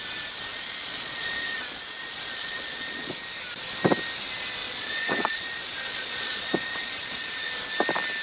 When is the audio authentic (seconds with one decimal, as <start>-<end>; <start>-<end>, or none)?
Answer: 0.0-0.5; 3.1-4.6; 7.5-8.2